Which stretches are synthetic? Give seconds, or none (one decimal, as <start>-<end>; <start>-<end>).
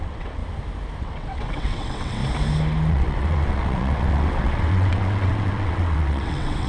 0.0-0.4; 1.0-2.2; 2.9-6.7